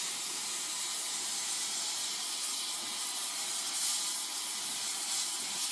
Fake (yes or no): no